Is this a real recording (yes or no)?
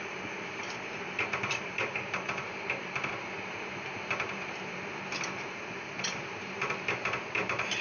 no